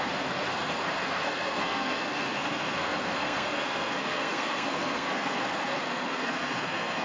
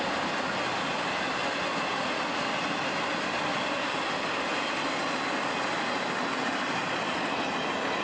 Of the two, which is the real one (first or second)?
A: second